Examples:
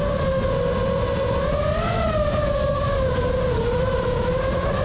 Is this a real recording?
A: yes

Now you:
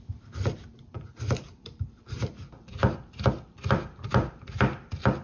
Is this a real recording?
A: no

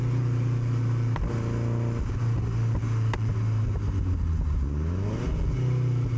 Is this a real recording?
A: yes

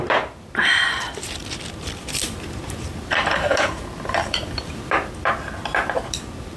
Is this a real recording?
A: no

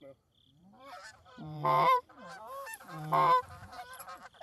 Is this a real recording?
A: no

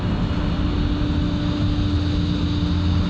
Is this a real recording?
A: yes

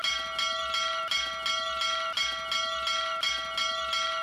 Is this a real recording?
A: yes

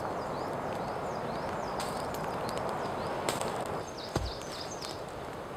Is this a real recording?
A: yes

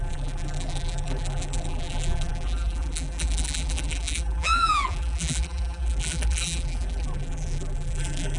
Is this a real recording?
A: no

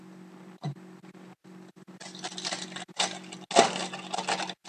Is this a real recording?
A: yes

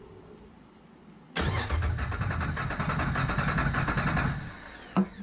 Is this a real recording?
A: yes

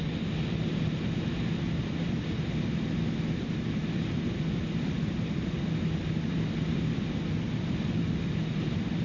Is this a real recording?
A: yes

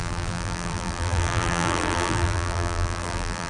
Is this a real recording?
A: no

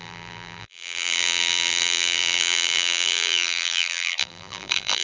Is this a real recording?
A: no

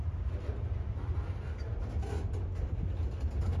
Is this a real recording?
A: yes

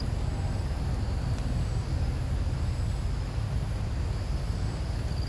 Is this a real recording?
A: yes